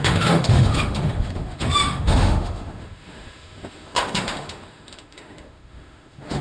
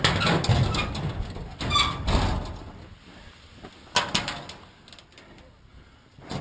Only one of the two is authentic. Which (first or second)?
second